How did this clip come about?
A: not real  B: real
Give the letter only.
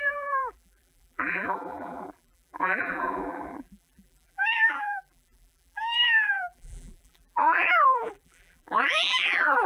A